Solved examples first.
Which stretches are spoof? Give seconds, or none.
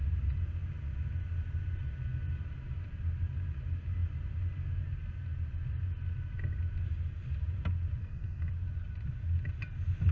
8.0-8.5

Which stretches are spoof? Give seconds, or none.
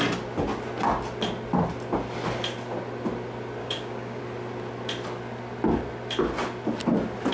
3.6-4.2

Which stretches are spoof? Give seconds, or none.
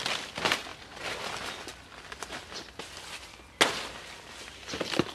none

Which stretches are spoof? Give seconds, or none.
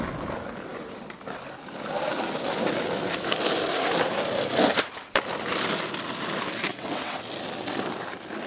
6.7-7.2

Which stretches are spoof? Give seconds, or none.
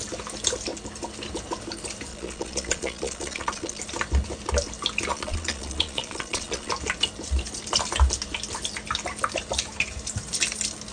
2.1-3.8; 5.1-6.7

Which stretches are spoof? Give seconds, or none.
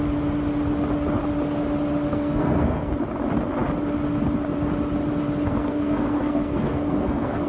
2.1-2.9; 5.5-7.5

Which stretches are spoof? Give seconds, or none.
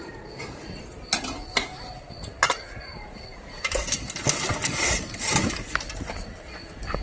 none